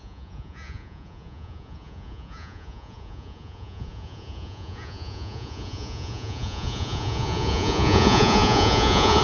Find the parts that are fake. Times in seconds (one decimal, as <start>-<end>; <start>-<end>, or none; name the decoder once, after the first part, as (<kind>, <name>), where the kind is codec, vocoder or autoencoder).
0.0-9.2 (vocoder, Vocos)